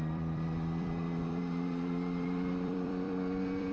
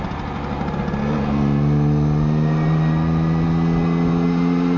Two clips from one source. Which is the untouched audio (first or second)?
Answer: second